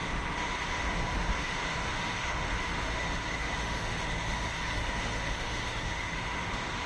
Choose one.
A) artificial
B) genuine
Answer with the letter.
A